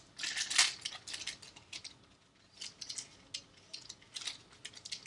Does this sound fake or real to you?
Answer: real